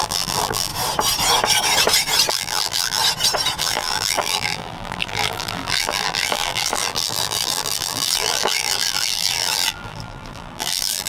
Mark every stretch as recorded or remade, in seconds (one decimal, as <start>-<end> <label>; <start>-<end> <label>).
0.0-0.7 remade; 0.7-2.3 recorded; 2.3-3.0 remade; 3.0-3.6 recorded; 3.6-11.1 remade